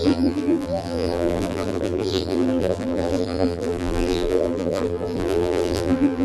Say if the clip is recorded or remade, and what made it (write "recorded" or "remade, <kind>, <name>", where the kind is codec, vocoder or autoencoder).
remade, vocoder, BigVGAN v2